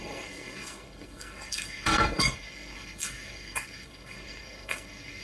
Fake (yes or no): yes